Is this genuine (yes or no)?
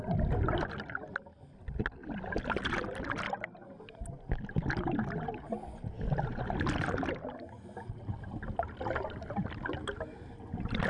yes